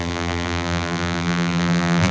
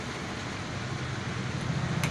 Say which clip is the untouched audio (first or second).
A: second